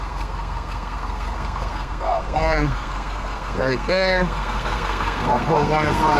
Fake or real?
fake